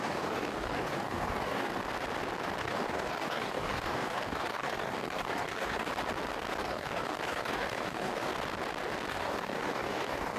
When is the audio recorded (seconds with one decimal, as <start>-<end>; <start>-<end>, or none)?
1.7-2.6; 5.9-6.6; 8.3-9.1